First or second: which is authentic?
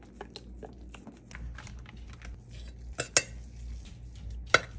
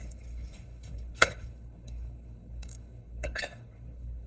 first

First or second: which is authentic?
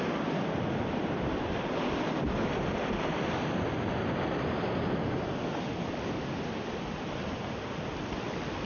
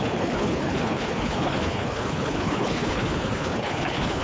first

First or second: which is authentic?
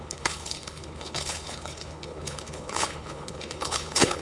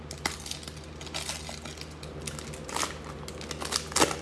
second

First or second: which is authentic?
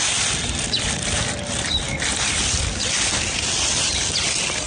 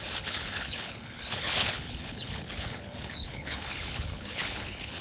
first